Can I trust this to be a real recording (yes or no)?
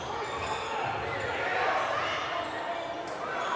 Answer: yes